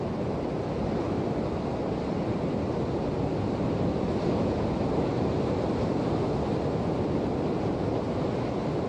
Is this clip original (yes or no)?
yes